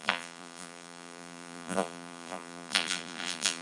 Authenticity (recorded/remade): remade